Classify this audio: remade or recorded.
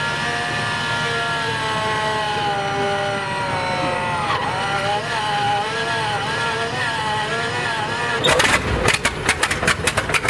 recorded